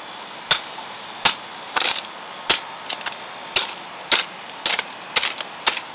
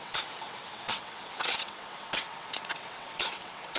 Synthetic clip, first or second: second